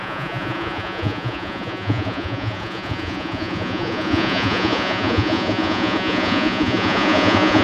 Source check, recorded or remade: remade